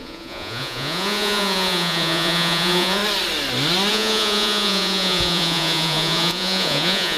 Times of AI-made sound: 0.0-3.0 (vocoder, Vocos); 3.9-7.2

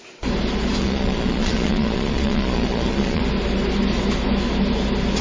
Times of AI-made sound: 0.8-3.2 (vocoder, Vocos)

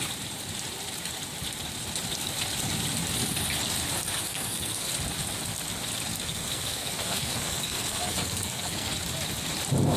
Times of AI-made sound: 4.2-4.9 (codec, SNAC); 6.1-8.9

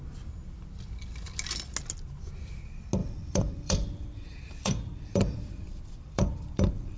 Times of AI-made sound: 3.0-7.0 (vocoder, BigVGAN v2)

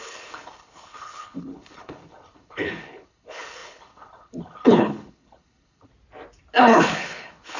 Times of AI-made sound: 0.0-5.9 (codec, HILCodec); 6.6-7.6

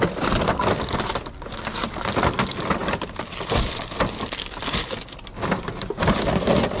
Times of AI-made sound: none

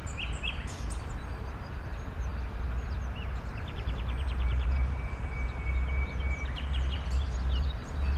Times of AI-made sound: 0.0-2.3 (vocoder, BigVGAN v2); 3.6-8.2

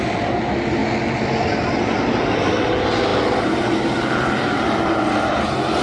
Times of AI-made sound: none